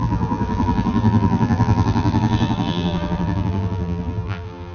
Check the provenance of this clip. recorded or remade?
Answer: remade